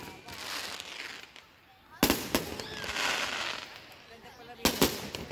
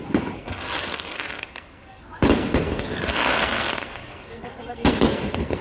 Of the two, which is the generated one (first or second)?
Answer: second